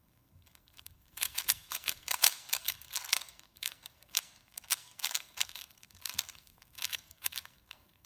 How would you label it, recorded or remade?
remade